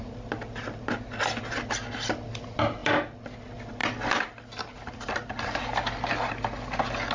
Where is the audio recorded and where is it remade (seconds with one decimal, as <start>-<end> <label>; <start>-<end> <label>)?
0.0-7.1 recorded